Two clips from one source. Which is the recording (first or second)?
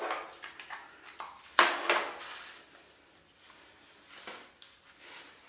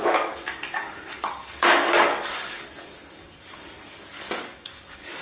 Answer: first